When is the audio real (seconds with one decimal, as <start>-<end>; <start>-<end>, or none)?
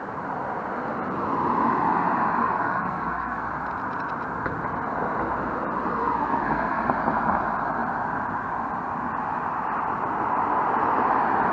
0.0-2.4; 3.5-5.9; 6.8-11.5